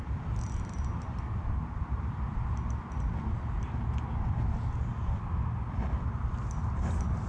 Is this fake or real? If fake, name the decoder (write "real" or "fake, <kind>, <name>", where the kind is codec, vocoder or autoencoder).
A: real